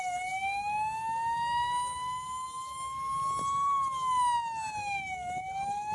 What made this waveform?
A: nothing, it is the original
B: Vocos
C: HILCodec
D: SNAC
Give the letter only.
A